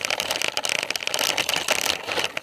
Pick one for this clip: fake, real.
real